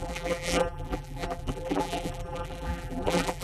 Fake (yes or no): yes